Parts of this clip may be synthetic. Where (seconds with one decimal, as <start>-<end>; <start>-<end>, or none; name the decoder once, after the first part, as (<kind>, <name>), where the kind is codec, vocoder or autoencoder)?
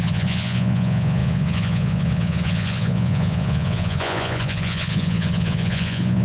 0.0-6.2 (vocoder, Vocos)